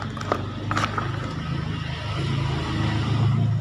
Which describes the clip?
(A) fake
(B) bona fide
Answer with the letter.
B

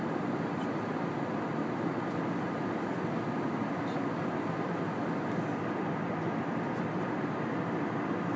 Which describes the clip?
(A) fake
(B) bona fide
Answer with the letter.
B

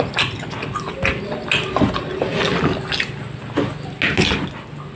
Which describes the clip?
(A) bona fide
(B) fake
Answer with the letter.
A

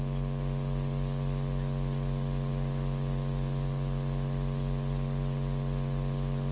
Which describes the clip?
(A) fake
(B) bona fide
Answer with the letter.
B